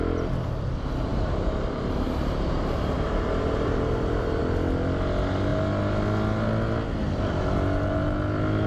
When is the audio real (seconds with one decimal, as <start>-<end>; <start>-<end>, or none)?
0.0-1.1; 4.4-8.7